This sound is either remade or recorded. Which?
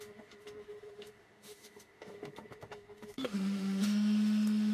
remade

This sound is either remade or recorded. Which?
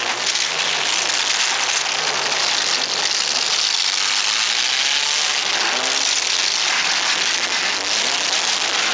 recorded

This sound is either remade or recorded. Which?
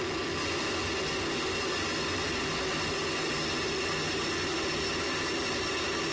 recorded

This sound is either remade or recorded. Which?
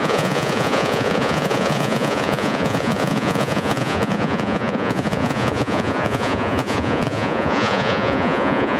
remade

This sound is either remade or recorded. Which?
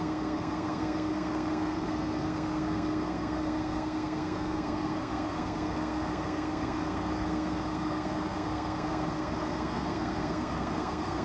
remade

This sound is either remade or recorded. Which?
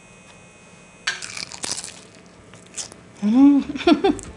recorded